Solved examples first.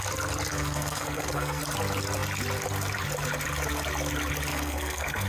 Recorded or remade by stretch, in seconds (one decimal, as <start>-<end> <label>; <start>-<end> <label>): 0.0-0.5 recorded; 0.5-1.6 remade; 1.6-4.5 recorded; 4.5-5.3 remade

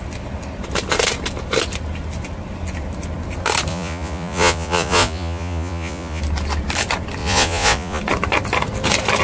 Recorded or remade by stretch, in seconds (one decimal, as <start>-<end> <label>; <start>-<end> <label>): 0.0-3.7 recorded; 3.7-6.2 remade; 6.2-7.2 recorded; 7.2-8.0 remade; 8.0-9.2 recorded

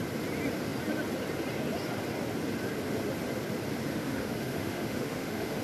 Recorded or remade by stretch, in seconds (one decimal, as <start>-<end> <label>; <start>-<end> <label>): 0.0-3.9 recorded; 3.9-5.6 remade

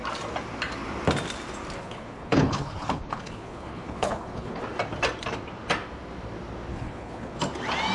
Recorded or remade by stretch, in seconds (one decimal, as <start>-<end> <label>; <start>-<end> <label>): 0.0-1.8 recorded; 1.8-4.6 remade; 4.6-6.7 recorded; 6.7-7.4 remade; 7.4-7.9 recorded